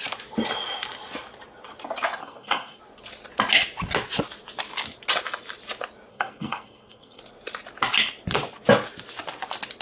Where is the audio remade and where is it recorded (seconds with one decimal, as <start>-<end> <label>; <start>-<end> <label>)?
0.0-2.2 recorded; 2.2-2.8 remade; 2.8-6.1 recorded; 6.1-7.2 remade; 7.2-9.8 recorded